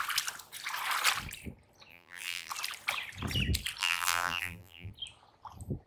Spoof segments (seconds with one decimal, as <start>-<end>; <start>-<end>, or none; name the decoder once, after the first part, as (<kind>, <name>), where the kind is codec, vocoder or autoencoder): 1.9-2.5 (vocoder, BigVGAN v2); 3.8-4.9